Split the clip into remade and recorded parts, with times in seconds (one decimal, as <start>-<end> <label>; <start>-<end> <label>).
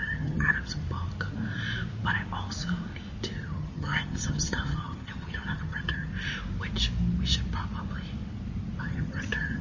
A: 0.0-0.8 remade; 0.8-3.3 recorded; 3.3-6.1 remade; 6.1-8.8 recorded; 8.8-9.6 remade